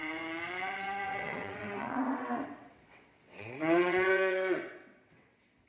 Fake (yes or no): yes